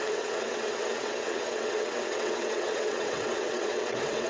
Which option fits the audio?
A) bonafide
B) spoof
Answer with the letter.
B